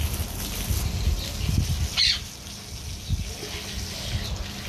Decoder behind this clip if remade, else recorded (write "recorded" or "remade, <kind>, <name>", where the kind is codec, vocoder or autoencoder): recorded